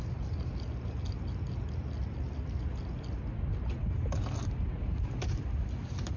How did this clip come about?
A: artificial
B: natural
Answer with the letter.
B